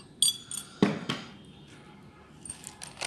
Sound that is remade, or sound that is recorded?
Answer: recorded